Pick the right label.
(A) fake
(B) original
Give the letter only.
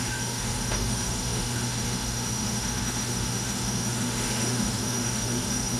A